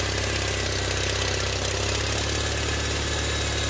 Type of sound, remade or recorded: recorded